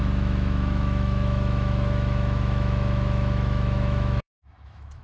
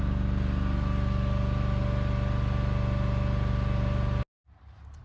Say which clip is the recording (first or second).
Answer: second